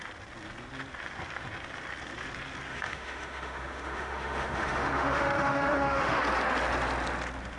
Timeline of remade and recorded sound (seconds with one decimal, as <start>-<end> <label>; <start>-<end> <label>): 0.0-2.7 recorded; 2.7-6.2 remade; 6.2-7.6 recorded